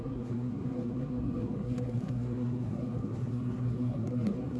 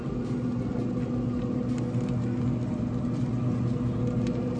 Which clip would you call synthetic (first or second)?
first